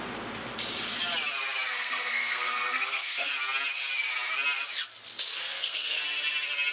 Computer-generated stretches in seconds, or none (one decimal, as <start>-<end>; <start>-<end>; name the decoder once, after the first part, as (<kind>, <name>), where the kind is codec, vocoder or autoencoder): 1.7-3.3 (codec, SNAC); 5.5-6.0